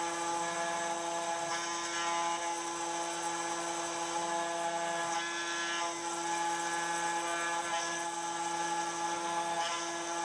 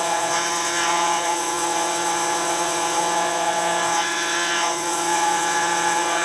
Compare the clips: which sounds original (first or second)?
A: first